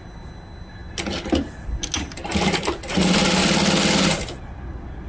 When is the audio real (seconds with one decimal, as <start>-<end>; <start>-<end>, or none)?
0.0-5.1